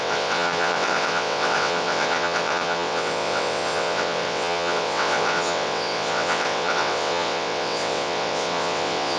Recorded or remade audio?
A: remade